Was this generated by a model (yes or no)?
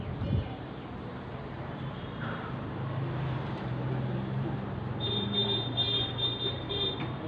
yes